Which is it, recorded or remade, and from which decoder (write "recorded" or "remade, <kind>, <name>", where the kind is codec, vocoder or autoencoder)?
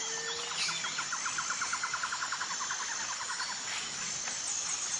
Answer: recorded